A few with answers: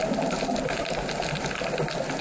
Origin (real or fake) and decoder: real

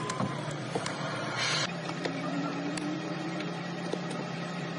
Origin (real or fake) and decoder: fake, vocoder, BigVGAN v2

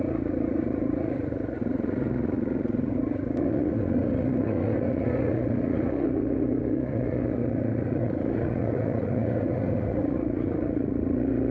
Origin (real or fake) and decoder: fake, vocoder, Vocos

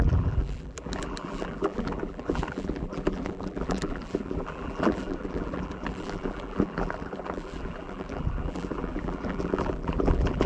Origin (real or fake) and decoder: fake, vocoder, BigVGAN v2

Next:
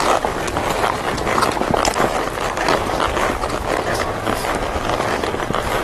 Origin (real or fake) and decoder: real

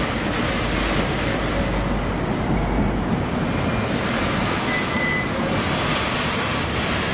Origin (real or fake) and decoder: real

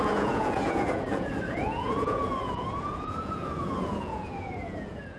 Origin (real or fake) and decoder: fake, vocoder, Vocos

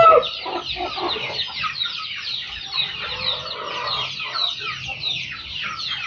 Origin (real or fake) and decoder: real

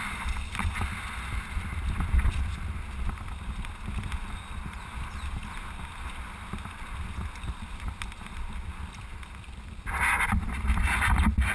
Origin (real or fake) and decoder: real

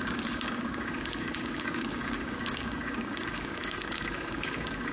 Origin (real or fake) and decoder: fake, codec, DAC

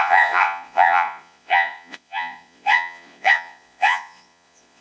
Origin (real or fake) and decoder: fake, vocoder, Vocos